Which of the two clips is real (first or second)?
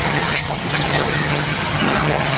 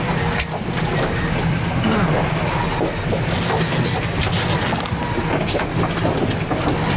second